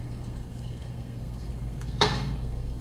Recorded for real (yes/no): no